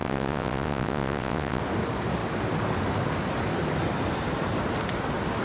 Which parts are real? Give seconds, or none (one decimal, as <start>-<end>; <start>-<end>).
1.6-5.4